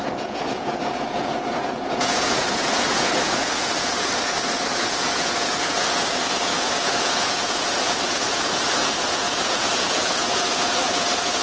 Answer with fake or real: fake